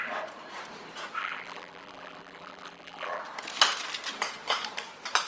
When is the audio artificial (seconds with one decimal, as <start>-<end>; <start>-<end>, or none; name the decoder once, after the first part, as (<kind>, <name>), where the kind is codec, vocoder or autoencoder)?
1.2-3.2 (vocoder, BigVGAN v2)